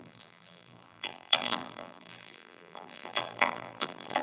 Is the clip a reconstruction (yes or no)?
yes